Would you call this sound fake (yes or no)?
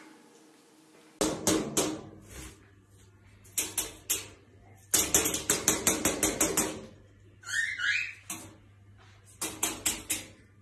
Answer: no